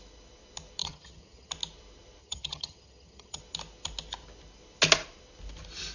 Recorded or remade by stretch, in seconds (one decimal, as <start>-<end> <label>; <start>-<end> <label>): 0.0-0.8 recorded; 0.8-1.5 remade; 1.5-2.2 recorded; 2.2-3.4 remade; 3.4-5.9 recorded